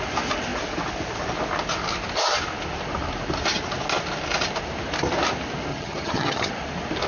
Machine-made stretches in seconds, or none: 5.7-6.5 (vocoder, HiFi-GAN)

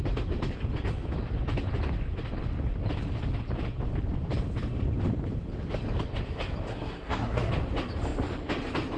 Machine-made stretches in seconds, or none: 6.7-7.5 (codec, SNAC)

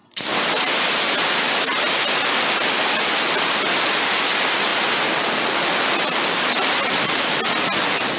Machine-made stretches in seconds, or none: none

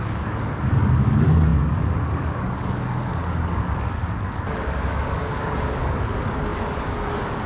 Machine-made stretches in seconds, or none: 0.0-7.5 (codec, DAC)

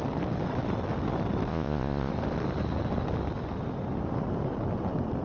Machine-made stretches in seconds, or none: 1.5-2.1 (vocoder, Vocos)

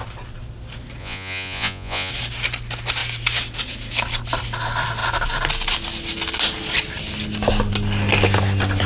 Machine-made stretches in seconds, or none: 1.0-2.1 (vocoder, Vocos)

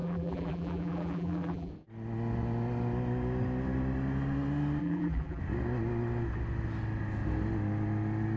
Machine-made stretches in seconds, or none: 0.0-1.7 (vocoder, BigVGAN v2); 4.8-5.4

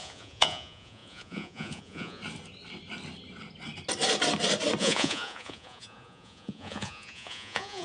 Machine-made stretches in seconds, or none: 0.0-2.2 (vocoder, Vocos); 4.8-7.8